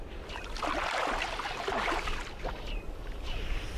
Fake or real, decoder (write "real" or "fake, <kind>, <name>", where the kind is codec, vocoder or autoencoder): real